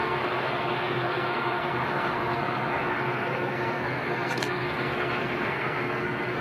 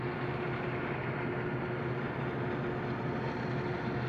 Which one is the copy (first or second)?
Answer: first